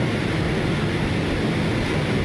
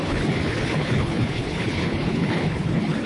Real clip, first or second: first